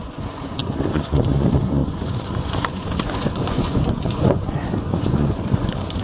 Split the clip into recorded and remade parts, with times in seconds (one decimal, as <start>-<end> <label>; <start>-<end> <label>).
0.0-6.0 remade